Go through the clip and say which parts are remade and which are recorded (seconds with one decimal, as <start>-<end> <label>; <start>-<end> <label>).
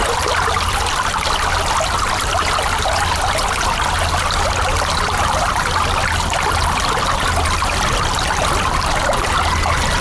0.0-10.0 recorded